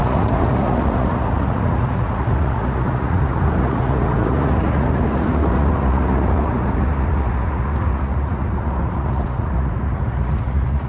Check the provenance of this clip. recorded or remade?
remade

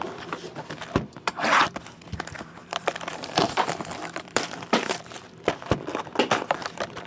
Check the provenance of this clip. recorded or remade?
remade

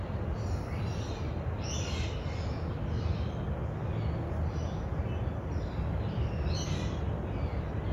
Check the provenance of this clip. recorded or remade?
recorded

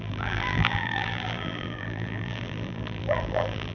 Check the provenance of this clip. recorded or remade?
remade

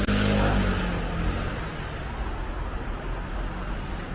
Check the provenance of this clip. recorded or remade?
recorded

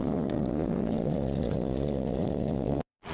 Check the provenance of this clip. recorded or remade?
remade